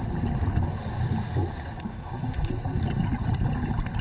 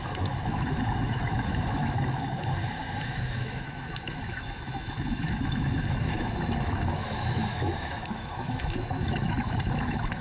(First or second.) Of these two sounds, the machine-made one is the second